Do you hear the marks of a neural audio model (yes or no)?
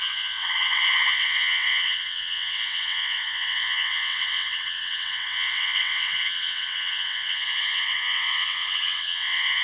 yes